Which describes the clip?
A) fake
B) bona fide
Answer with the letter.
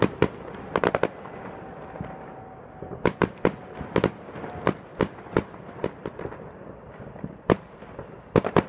B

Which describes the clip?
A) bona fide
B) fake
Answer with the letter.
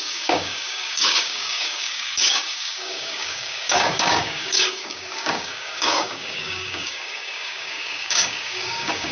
B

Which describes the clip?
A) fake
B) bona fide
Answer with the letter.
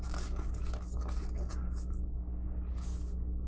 A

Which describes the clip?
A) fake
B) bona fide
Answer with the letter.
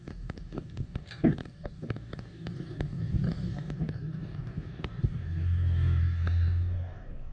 A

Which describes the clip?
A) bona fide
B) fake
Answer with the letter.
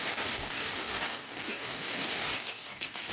B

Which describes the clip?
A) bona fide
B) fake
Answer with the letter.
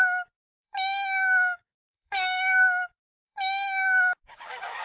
B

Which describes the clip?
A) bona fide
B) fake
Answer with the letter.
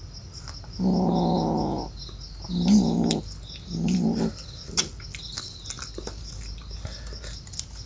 A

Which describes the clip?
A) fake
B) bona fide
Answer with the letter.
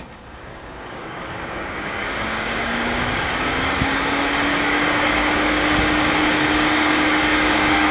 A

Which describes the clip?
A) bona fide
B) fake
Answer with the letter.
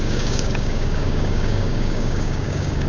B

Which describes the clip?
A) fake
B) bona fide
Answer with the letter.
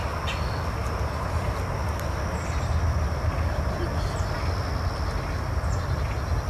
B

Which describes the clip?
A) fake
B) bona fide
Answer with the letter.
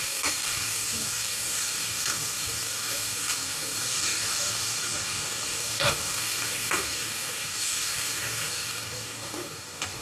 A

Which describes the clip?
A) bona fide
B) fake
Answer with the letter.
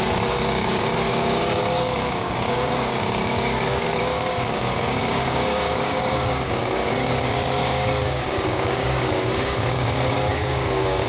B